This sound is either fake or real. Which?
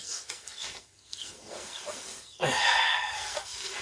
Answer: fake